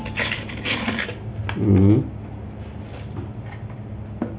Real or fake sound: real